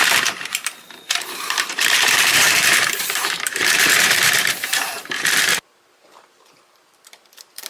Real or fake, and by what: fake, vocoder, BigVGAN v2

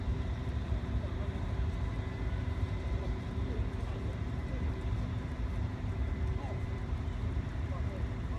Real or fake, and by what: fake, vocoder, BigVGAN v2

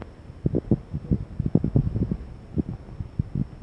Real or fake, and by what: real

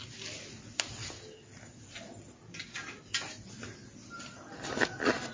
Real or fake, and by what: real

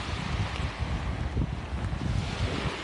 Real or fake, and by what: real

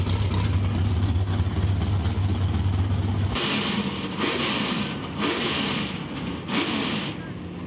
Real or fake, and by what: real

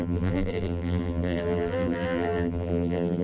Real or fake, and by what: fake, vocoder, BigVGAN v2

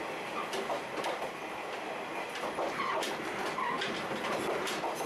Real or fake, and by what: real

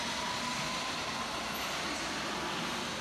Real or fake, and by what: real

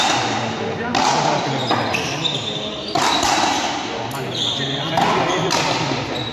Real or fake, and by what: real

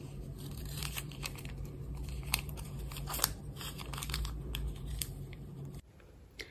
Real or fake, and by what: fake, vocoder, BigVGAN v2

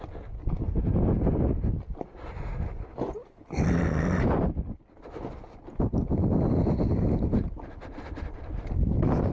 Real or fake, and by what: real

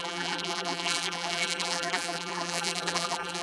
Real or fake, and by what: fake, vocoder, BigVGAN v2